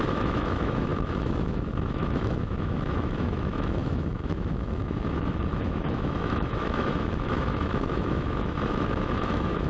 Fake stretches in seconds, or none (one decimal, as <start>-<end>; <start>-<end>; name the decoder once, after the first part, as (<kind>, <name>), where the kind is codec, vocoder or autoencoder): 0.0-9.7 (autoencoder, DAC-VAE)